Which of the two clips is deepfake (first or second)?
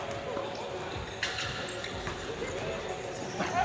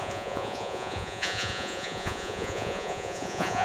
second